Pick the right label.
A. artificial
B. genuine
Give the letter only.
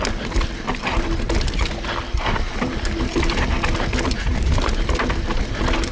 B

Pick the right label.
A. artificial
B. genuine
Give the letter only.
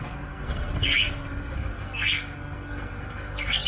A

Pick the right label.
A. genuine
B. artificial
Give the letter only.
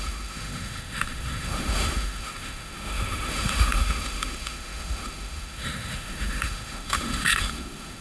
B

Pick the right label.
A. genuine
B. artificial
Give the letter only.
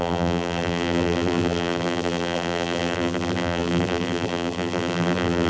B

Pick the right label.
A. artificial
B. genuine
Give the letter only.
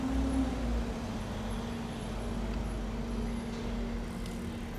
B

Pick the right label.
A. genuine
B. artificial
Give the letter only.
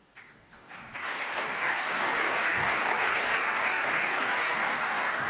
B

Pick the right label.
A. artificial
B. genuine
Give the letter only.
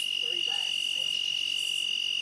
B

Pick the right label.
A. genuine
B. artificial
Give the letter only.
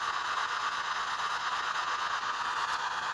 B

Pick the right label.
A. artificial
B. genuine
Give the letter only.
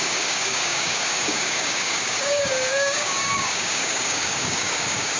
A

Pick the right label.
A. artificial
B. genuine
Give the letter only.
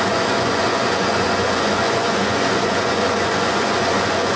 A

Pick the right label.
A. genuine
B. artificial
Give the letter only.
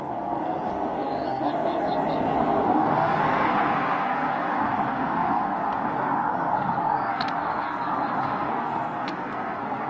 B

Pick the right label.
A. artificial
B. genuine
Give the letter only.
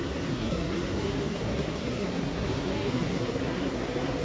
A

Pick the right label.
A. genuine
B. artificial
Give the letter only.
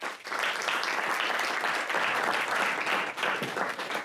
A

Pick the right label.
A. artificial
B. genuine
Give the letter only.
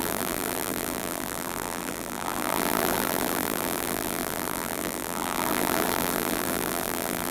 A